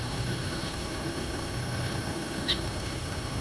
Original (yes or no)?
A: no